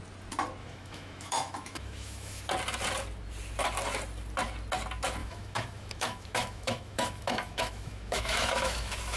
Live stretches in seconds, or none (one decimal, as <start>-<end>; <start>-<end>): 0.0-0.6; 2.4-5.2